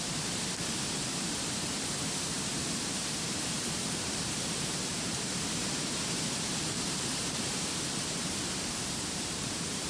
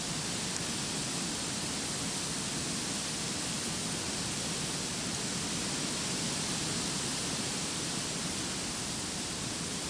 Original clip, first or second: second